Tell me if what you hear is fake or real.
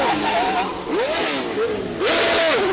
real